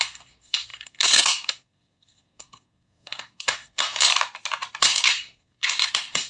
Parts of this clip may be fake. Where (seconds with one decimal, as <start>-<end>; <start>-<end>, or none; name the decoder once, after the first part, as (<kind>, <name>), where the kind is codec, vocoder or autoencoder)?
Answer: 0.0-4.1 (codec, SNAC); 4.8-6.3